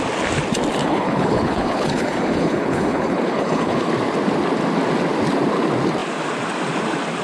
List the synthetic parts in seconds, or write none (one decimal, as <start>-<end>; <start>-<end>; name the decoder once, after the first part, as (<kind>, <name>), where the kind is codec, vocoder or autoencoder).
0.8-3.9 (codec, HILCodec)